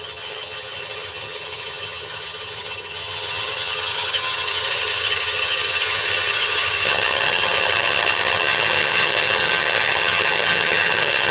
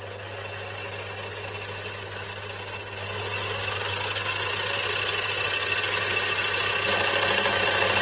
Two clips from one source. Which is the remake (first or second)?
first